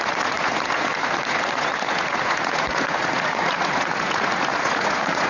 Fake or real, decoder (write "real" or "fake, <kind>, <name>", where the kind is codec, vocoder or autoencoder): fake, vocoder, Vocos